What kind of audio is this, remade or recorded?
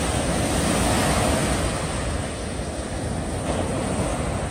recorded